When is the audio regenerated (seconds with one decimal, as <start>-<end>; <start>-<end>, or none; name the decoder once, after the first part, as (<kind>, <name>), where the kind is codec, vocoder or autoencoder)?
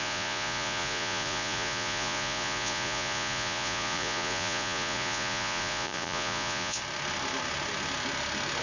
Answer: 0.0-6.8 (vocoder, Vocos)